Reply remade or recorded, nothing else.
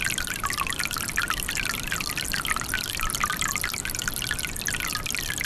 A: recorded